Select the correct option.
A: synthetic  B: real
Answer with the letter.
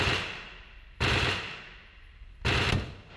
B